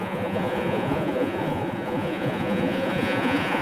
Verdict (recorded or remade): remade